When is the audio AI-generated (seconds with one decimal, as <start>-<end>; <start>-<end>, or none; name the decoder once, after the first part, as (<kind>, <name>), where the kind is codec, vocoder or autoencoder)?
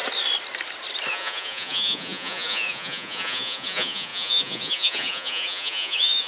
1.1-6.3 (vocoder, Vocos)